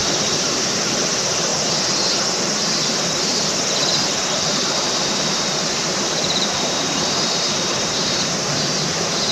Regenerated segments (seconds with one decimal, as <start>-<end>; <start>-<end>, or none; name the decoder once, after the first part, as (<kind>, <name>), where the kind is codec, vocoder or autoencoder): 0.0-1.5 (vocoder, BigVGAN v2); 2.4-9.3

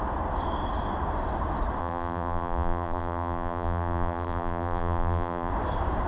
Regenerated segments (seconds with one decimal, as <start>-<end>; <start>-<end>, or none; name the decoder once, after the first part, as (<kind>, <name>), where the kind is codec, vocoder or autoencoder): 1.8-5.5 (vocoder, BigVGAN v2)

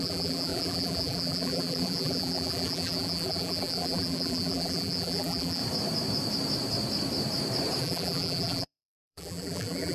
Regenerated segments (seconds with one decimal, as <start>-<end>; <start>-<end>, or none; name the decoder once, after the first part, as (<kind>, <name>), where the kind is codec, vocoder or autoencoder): 0.0-5.6 (vocoder, BigVGAN v2); 7.8-9.9

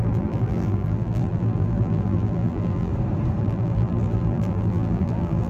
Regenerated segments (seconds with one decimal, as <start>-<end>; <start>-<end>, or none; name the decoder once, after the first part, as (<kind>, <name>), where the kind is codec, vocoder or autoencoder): 0.0-2.9 (vocoder, BigVGAN v2); 3.4-5.5

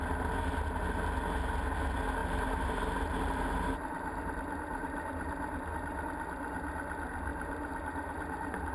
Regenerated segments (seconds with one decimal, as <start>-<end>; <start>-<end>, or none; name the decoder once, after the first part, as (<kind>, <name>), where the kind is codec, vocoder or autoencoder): 2.2-5.7 (vocoder, BigVGAN v2); 7.3-8.7

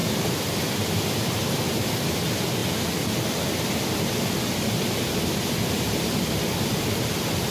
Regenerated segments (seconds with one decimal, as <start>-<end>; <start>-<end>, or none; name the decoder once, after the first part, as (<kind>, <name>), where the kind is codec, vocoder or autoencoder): 0.0-7.5 (vocoder, BigVGAN v2)

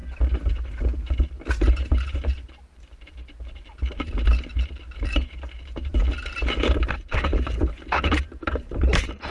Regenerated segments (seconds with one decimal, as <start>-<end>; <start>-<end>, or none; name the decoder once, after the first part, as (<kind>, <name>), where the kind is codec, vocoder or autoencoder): 1.5-3.7 (vocoder, BigVGAN v2); 5.0-6.0; 6.7-9.3

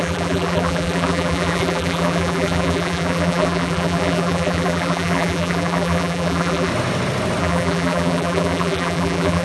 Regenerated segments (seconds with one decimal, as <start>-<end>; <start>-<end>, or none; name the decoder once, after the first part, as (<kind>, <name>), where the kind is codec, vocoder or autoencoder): 0.0-6.7 (vocoder, BigVGAN v2); 7.4-9.4